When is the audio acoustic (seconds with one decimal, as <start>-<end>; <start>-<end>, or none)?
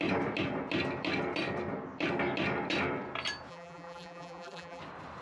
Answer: 0.0-3.5; 4.8-5.2